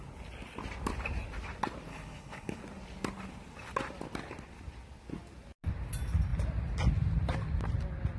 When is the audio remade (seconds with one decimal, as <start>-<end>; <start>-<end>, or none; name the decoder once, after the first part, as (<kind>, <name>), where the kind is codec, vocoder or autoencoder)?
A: 1.9-2.6 (codec, HILCodec)